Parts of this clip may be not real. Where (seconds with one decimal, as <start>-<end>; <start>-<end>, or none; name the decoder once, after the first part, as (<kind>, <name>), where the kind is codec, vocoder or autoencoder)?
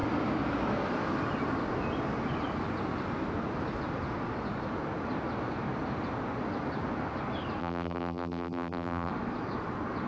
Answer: 7.6-9.1 (vocoder, BigVGAN v2)